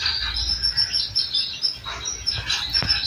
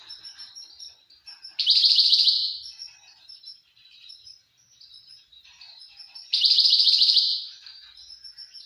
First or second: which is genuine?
first